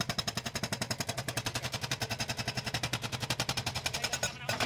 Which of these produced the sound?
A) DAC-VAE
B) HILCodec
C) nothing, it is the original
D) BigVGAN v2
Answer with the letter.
C